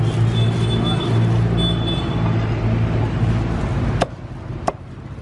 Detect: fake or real real